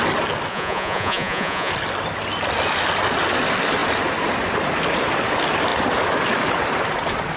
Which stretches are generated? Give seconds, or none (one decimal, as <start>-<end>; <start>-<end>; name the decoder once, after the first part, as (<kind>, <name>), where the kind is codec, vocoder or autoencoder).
0.5-1.7 (vocoder, Vocos)